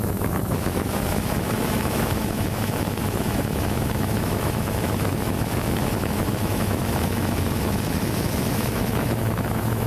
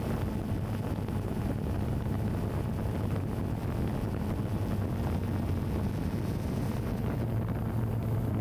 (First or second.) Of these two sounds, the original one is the second